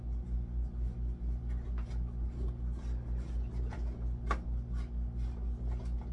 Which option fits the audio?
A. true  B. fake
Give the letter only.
A